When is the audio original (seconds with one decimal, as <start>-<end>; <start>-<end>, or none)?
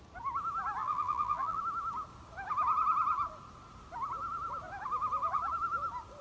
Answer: 0.0-0.8; 1.6-6.2